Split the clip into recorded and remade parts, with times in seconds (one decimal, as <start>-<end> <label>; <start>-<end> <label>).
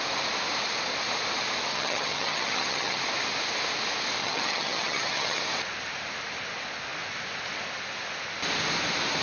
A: 0.0-1.7 recorded; 1.7-3.0 remade; 3.0-4.2 recorded; 4.2-5.4 remade; 5.4-9.2 recorded